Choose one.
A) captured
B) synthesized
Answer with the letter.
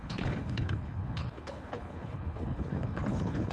B